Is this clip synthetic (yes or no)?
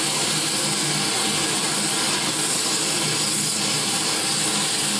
no